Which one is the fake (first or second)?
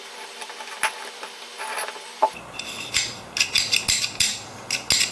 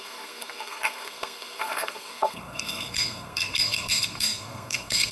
second